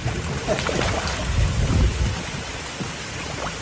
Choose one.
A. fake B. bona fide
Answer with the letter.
B